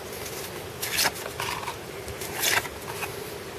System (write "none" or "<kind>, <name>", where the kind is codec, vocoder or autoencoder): none